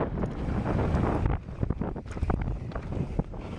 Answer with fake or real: real